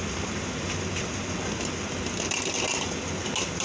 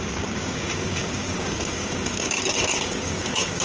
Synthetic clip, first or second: second